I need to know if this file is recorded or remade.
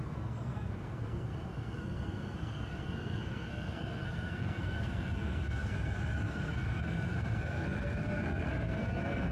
remade